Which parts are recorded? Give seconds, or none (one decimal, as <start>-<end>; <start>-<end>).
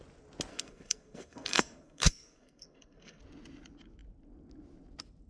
0.0-0.5; 3.2-5.3